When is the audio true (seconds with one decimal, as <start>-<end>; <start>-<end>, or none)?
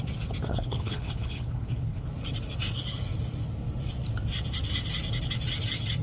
0.0-0.5; 2.1-6.0